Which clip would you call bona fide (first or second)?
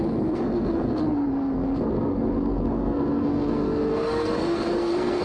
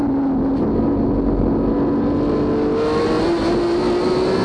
second